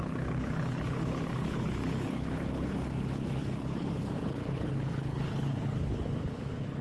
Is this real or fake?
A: fake